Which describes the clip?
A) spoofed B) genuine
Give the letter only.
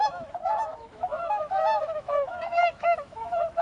A